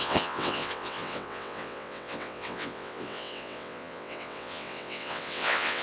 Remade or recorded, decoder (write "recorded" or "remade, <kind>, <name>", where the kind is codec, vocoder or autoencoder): remade, vocoder, WaveNeXt